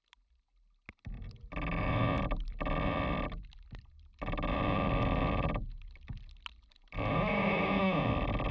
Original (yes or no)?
yes